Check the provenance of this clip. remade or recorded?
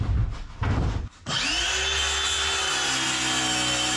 recorded